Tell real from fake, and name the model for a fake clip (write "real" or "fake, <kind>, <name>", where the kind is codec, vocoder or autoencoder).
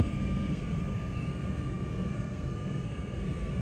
fake, codec, SNAC